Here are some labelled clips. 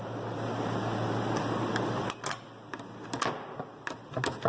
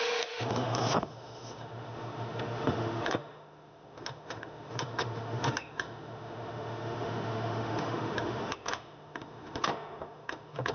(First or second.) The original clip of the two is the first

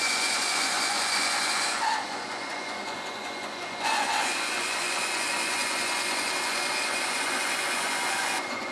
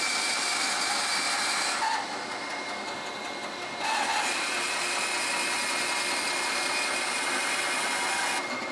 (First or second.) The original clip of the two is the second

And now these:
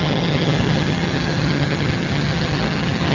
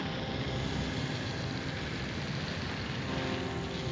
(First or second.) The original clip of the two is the second